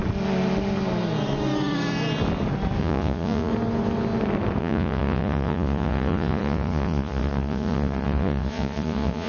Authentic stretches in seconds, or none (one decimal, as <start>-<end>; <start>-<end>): 0.0-2.8; 3.5-4.6